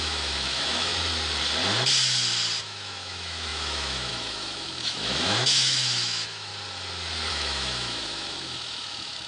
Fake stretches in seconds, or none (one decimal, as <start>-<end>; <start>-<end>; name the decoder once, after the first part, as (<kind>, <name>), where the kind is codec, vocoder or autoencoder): 0.0-0.9 (autoencoder, DAC-VAE); 2.6-6.5; 7.3-9.3